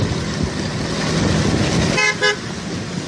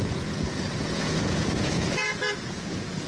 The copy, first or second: second